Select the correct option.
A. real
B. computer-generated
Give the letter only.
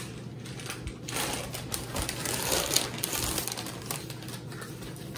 A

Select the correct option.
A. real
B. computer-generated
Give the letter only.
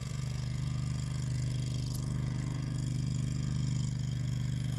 B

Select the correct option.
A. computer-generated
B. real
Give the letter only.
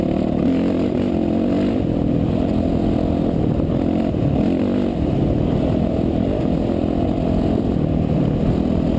B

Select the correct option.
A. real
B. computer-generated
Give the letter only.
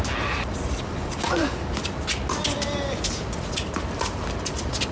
A